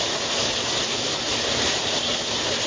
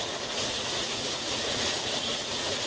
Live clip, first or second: first